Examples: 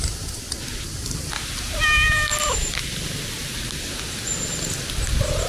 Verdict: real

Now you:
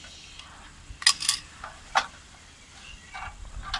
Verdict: real